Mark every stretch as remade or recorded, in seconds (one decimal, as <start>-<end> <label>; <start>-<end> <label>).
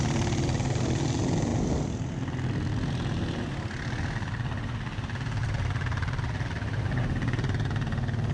0.0-5.4 recorded; 5.4-6.5 remade; 6.5-8.3 recorded